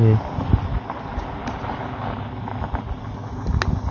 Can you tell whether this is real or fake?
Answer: real